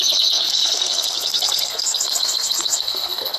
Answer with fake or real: fake